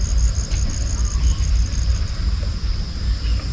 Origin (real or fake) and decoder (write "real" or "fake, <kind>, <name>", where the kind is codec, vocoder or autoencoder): real